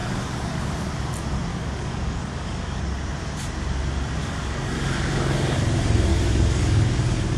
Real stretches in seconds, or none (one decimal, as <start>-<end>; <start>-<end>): 0.9-1.5; 2.8-4.2; 5.6-6.1